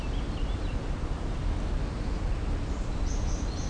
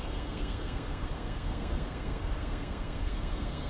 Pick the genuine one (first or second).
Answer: first